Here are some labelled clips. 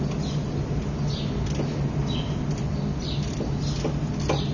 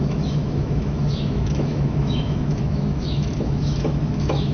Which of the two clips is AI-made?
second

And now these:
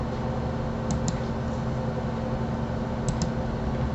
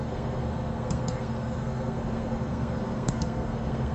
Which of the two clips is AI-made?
second